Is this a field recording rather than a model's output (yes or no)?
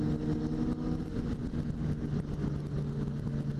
yes